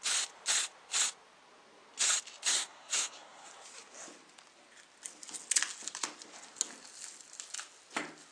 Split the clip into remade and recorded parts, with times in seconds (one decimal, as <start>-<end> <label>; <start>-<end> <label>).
0.0-2.5 recorded; 2.5-3.5 remade; 3.5-8.3 recorded

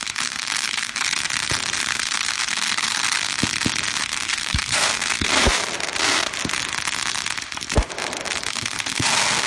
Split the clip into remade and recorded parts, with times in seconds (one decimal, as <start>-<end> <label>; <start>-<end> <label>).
0.0-1.2 remade; 1.2-1.8 recorded; 1.8-3.2 remade; 3.2-4.0 recorded; 4.0-5.3 remade; 5.3-8.5 recorded; 8.5-9.5 remade

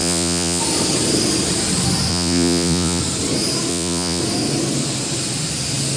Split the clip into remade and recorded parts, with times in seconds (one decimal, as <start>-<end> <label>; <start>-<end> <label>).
0.0-0.6 remade; 0.6-2.1 recorded; 2.1-3.0 remade; 3.0-3.7 recorded; 3.7-4.2 remade; 4.2-6.0 recorded

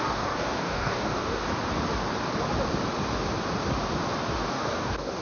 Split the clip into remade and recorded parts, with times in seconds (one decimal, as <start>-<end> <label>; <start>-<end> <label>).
0.0-1.4 remade; 1.4-4.5 recorded; 4.5-5.2 remade

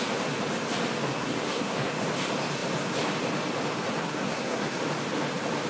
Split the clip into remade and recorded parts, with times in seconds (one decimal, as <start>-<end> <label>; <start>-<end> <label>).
0.0-1.1 recorded; 1.1-1.9 remade; 1.9-4.0 recorded; 4.0-4.8 remade; 4.8-5.7 recorded

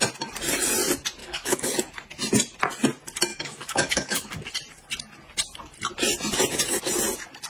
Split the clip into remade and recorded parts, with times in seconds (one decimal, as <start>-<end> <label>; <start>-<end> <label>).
0.0-1.2 recorded; 1.2-1.7 remade; 1.7-3.3 recorded; 3.3-4.3 remade; 4.3-7.5 recorded

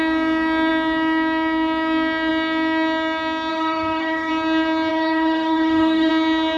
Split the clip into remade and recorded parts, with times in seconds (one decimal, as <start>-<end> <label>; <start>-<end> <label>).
0.0-3.5 recorded; 3.5-4.3 remade; 4.3-4.9 recorded; 4.9-6.1 remade; 6.1-6.6 recorded